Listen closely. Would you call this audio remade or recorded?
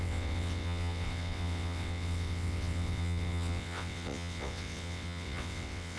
remade